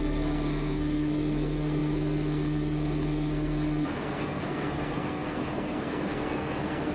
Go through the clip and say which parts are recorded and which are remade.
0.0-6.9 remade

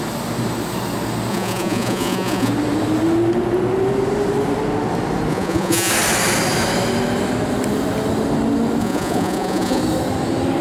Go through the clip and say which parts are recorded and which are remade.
0.0-1.3 recorded; 1.3-2.5 remade; 2.5-5.3 recorded; 5.3-5.9 remade; 5.9-8.8 recorded; 8.8-9.8 remade; 9.8-10.6 recorded

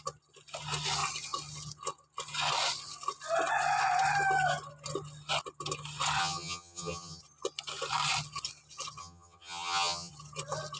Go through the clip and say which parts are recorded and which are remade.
0.0-6.2 recorded; 6.2-7.2 remade; 7.2-9.0 recorded; 9.0-10.1 remade; 10.1-10.8 recorded